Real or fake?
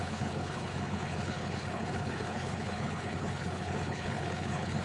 fake